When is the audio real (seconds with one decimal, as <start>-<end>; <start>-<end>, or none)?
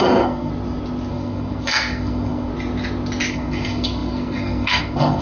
0.5-1.1; 2.5-3.3